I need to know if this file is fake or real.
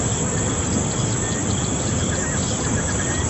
real